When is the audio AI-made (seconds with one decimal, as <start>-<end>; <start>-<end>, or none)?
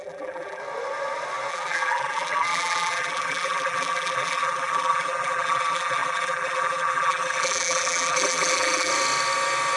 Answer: 0.0-0.6; 1.5-8.9